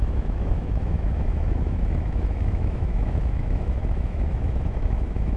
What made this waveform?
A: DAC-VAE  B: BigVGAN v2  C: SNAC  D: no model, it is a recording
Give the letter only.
A